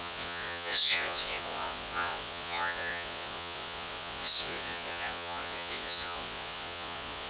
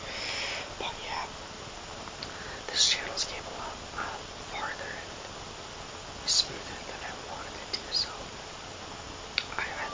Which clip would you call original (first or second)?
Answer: second